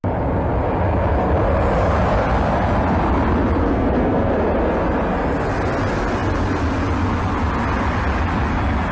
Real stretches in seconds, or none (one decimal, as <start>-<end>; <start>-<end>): 0.0-3.6; 4.3-8.9